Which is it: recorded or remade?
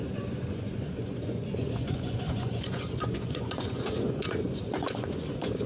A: remade